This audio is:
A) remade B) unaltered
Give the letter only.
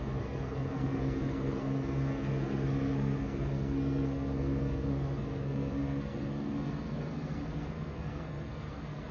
A